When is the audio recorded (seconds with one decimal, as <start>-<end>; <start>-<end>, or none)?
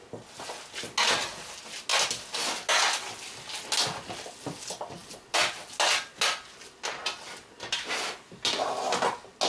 0.0-9.5